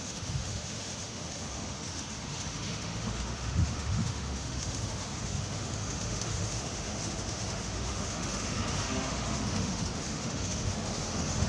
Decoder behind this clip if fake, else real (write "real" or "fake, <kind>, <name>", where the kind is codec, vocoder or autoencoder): fake, autoencoder, DAC-VAE